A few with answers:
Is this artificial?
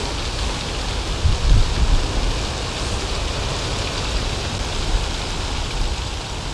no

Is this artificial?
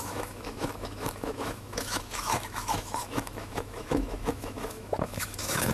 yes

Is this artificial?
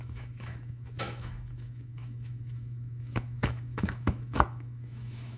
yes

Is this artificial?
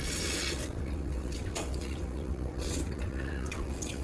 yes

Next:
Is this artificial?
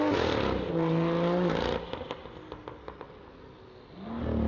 no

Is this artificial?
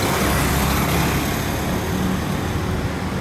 no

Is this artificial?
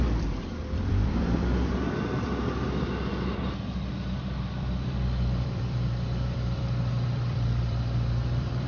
yes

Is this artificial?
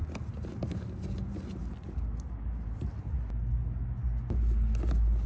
no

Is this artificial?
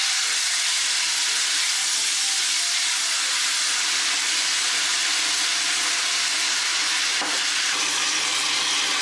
no